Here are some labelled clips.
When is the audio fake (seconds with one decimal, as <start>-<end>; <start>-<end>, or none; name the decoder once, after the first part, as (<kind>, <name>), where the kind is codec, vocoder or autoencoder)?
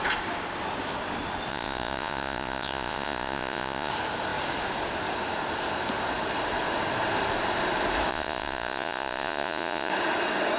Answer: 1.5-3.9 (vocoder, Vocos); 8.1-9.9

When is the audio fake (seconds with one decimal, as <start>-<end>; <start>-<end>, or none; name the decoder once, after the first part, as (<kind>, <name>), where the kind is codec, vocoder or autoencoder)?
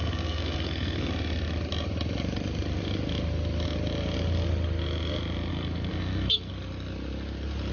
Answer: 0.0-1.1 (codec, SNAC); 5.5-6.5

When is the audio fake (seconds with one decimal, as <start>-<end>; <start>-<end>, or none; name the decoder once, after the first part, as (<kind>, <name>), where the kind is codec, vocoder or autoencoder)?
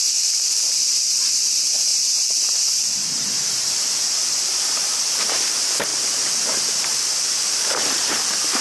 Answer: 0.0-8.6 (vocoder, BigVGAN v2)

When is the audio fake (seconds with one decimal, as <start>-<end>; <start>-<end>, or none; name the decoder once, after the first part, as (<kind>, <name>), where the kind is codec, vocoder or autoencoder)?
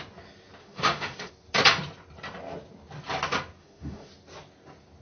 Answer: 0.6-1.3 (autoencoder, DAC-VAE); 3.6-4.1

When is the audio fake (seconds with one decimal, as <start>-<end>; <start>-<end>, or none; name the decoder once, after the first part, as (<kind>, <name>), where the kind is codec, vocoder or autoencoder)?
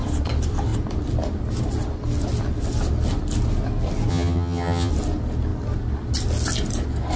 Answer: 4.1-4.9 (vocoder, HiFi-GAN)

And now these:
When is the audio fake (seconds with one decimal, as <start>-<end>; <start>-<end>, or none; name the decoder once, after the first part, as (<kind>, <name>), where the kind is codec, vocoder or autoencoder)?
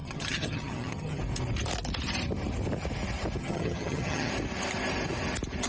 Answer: 0.0-1.2 (vocoder, HiFi-GAN); 3.4-4.3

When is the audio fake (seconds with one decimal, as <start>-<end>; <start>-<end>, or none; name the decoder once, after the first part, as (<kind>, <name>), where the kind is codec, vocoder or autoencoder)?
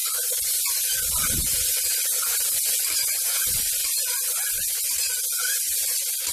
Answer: 0.0-1.1 (vocoder, BigVGAN v2)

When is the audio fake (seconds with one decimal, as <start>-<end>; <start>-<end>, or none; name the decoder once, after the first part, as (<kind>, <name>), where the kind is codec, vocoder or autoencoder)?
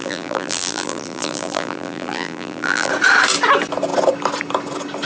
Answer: 0.0-2.9 (vocoder, BigVGAN v2)